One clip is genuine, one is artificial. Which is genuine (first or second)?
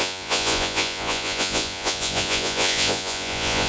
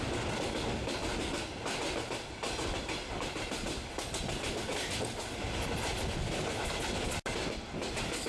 second